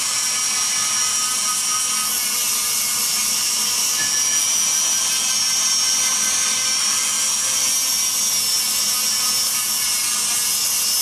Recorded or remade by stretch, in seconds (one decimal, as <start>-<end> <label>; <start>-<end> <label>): 0.0-2.5 recorded; 2.5-3.8 remade; 3.8-11.0 recorded